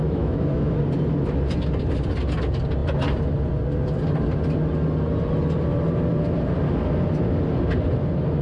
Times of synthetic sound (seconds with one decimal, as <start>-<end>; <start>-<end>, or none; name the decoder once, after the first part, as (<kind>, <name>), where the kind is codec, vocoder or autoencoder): 0.0-0.8 (autoencoder, DAC-VAE)